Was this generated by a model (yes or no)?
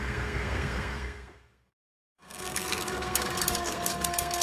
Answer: yes